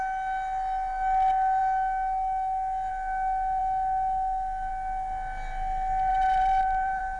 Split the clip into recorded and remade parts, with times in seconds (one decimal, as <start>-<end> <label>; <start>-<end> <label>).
0.0-6.1 recorded; 6.1-7.2 remade